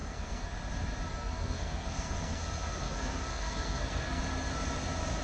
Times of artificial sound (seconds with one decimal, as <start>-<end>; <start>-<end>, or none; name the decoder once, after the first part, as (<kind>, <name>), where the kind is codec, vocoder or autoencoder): 0.0-0.5 (codec, SNAC); 1.1-4.2